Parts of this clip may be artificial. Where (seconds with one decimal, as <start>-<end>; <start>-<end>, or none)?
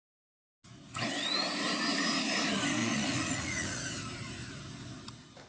2.8-3.8